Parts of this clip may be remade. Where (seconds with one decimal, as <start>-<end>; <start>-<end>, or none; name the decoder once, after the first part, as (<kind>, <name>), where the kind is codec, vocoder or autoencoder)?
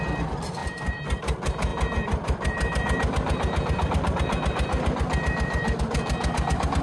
0.6-1.2 (vocoder, BigVGAN v2); 1.7-5.8